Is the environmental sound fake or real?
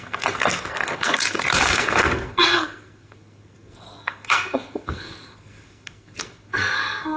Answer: fake